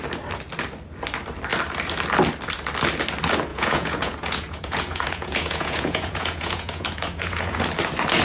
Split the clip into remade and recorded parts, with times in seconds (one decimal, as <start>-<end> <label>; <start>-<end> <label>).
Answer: 0.0-3.5 recorded; 3.5-7.6 remade; 7.6-8.2 recorded